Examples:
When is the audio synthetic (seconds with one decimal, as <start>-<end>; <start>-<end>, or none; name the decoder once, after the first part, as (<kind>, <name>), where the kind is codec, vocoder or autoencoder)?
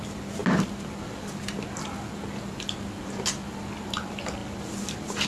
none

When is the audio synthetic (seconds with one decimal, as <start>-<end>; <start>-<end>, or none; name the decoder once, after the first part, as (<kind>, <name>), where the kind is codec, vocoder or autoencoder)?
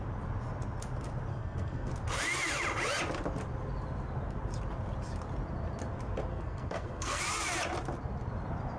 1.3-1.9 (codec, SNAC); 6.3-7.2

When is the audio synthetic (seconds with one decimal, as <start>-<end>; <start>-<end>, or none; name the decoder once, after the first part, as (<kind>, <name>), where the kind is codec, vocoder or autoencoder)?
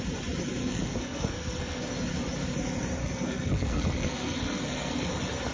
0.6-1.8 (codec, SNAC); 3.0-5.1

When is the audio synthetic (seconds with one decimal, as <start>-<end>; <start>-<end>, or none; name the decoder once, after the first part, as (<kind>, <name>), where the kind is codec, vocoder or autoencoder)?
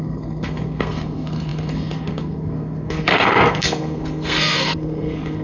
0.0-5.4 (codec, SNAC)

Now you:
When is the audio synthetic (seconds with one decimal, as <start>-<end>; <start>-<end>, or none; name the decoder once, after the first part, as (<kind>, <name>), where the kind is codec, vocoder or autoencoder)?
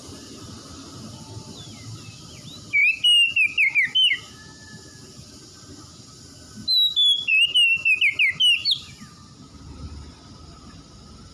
none